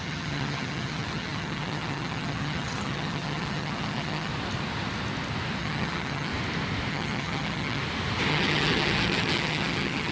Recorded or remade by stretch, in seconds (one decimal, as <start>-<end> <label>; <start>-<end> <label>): 0.0-4.3 remade; 4.3-5.6 recorded; 5.6-6.3 remade; 6.3-6.9 recorded; 6.9-7.8 remade; 7.8-8.3 recorded; 8.3-10.1 remade